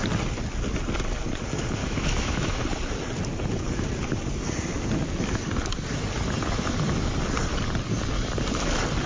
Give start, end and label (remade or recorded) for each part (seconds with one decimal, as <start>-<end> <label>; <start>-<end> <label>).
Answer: 0.0-1.8 recorded; 1.8-2.6 remade; 2.6-9.1 recorded